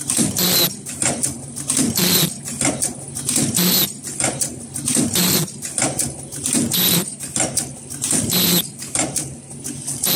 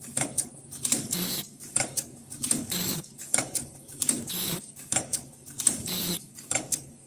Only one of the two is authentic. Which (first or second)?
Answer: first